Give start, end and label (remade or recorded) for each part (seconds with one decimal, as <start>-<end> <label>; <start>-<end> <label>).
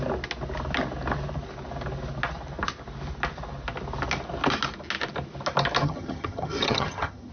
0.0-5.8 recorded; 5.8-7.3 remade